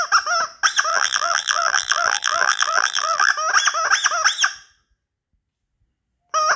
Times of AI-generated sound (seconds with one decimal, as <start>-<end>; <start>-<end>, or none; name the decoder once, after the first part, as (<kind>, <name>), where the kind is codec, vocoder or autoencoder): 0.9-3.3 (vocoder, BigVGAN v2)